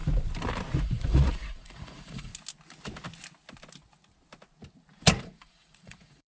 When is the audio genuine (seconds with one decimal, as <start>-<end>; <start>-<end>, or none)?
0.0-0.8; 2.3-5.2

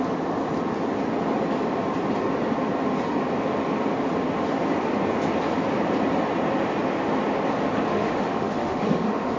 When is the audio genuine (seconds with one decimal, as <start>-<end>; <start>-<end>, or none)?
0.0-7.9